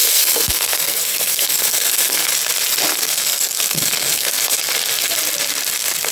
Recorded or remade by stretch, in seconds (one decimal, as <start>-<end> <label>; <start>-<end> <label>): 0.0-2.3 remade; 2.3-2.9 recorded; 2.9-4.6 remade; 4.6-6.1 recorded